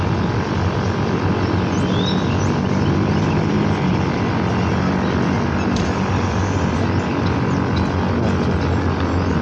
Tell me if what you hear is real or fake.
real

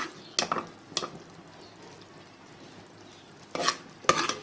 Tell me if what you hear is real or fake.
real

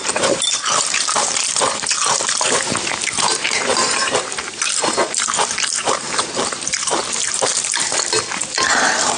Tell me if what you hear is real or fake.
fake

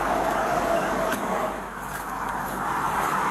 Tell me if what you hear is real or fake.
fake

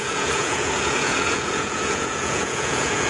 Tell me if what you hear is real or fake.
fake